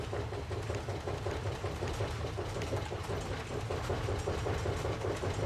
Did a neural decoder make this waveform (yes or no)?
no